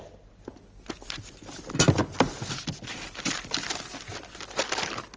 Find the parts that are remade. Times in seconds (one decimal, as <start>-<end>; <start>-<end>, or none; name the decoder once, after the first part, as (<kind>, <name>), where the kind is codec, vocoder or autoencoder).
none